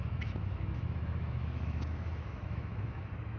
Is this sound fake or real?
fake